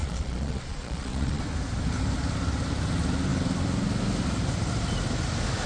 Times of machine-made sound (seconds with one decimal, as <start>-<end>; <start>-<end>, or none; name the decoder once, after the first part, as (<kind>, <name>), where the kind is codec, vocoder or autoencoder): 0.0-1.4 (vocoder, Vocos)